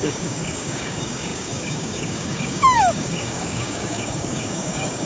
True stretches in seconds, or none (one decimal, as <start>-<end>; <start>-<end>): none